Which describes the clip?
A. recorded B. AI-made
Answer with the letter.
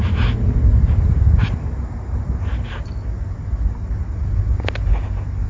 A